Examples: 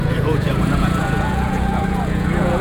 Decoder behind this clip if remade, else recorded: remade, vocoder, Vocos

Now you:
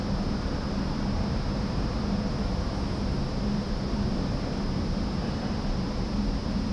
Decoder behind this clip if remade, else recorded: recorded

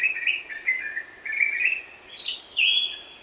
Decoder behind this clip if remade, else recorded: recorded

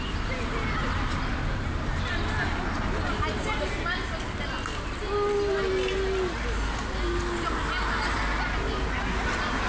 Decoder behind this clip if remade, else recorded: recorded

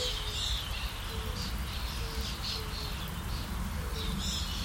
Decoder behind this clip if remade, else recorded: recorded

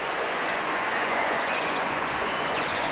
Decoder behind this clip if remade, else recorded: remade, vocoder, Vocos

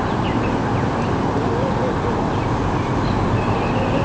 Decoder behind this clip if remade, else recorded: recorded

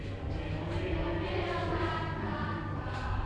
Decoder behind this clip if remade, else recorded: recorded